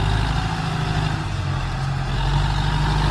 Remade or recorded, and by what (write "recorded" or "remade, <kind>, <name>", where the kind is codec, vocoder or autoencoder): recorded